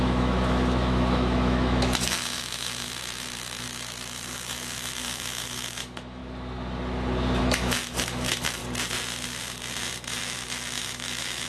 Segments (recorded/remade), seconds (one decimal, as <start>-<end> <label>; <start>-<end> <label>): 0.0-6.2 remade; 6.2-7.4 recorded; 7.4-8.6 remade; 8.6-10.2 recorded; 10.2-11.5 remade